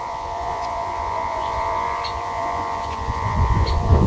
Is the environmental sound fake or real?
fake